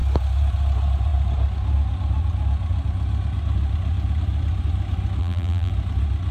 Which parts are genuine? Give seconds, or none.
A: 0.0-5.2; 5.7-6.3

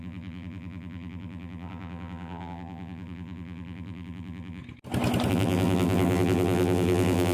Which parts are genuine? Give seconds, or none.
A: 4.6-5.3

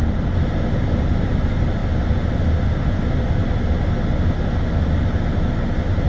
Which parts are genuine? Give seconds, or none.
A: 0.0-6.1

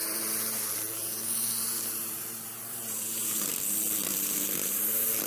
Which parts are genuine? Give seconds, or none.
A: 0.6-1.0; 3.5-4.1

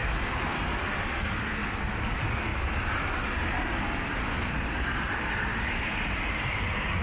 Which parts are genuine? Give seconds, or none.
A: 0.0-2.5

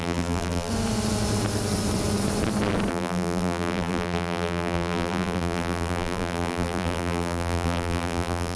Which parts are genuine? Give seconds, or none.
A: 0.7-2.9

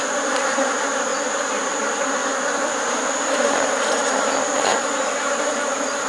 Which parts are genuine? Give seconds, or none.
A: 1.1-1.8

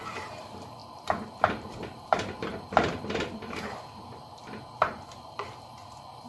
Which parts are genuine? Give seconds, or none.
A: none